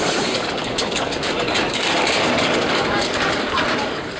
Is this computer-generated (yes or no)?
yes